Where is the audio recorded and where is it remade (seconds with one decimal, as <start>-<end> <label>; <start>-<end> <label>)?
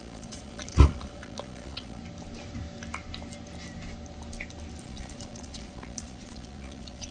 0.0-2.0 remade; 2.0-4.8 recorded; 4.8-7.1 remade